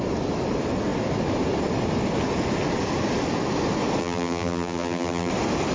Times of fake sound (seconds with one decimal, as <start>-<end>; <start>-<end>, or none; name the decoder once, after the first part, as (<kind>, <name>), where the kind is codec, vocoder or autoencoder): 4.0-5.3 (vocoder, BigVGAN v2)

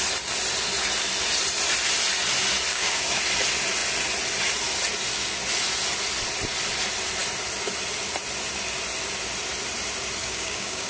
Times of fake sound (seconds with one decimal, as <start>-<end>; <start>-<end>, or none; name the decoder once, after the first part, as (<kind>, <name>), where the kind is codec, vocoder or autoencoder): 2.7-3.2 (codec, DAC); 10.2-10.9

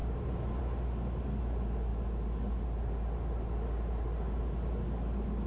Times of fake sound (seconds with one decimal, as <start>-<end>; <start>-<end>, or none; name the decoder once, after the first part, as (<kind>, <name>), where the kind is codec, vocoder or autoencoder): none

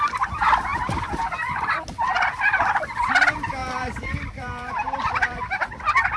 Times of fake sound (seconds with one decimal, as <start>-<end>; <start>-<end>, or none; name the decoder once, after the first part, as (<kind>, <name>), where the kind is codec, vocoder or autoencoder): 3.6-5.8 (vocoder, BigVGAN v2)